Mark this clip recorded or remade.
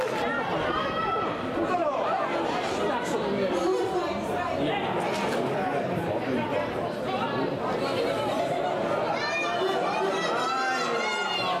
recorded